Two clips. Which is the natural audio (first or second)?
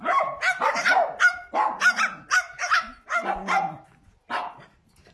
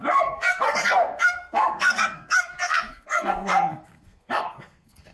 first